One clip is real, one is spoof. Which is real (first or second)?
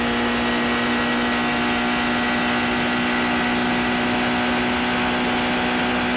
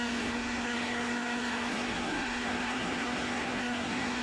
first